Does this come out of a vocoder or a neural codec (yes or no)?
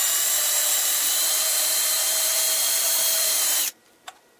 yes